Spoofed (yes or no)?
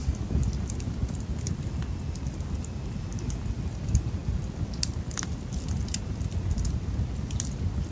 no